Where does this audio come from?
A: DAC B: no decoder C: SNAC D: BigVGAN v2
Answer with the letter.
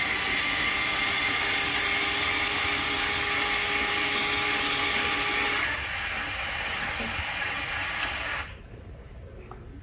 B